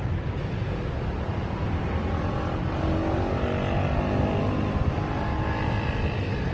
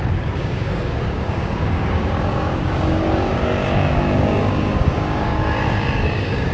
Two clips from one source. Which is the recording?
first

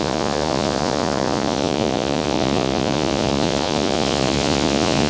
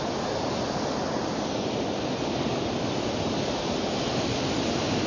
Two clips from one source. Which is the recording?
second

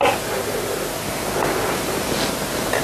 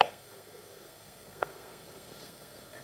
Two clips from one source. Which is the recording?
first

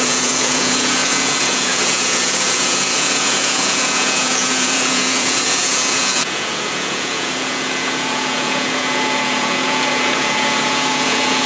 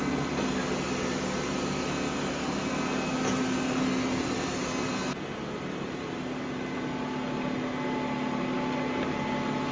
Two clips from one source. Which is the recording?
second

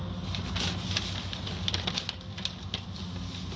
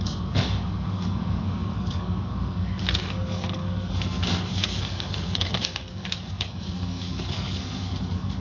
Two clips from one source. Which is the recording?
first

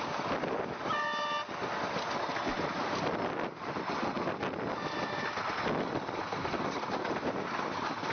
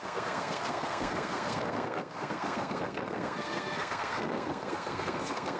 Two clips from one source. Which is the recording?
first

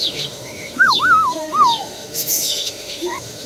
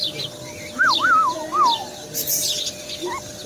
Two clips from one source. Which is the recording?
second